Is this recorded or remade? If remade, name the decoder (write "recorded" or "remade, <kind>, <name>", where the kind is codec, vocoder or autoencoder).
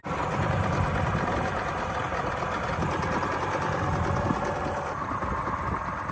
recorded